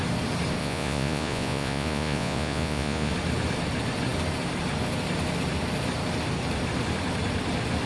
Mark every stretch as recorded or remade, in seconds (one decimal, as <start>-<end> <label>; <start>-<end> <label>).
0.0-0.6 recorded; 0.6-3.1 remade; 3.1-7.9 recorded

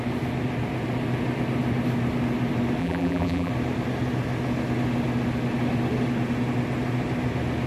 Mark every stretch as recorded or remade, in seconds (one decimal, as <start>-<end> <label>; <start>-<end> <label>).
0.0-2.8 recorded; 2.8-3.5 remade; 3.5-7.7 recorded

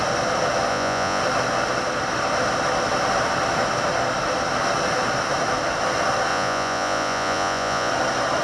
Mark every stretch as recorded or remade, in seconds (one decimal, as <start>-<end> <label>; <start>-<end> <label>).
0.0-0.7 recorded; 0.7-1.2 remade; 1.2-6.3 recorded; 6.3-7.9 remade; 7.9-8.4 recorded

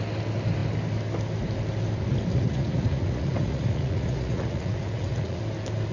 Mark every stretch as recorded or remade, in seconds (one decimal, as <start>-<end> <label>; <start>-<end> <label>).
0.0-2.3 recorded; 2.3-5.4 remade; 5.4-5.9 recorded

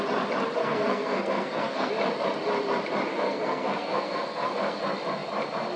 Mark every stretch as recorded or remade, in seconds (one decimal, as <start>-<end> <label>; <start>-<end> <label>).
0.0-0.6 recorded; 0.6-1.9 remade; 1.9-3.1 recorded; 3.1-4.8 remade; 4.8-5.8 recorded